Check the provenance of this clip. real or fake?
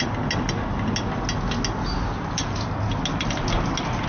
real